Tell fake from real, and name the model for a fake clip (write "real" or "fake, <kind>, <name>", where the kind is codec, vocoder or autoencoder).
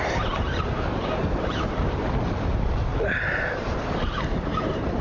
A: fake, vocoder, BigVGAN v2